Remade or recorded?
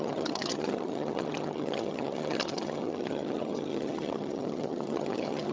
remade